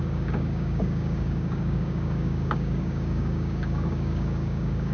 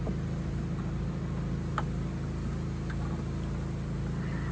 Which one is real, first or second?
second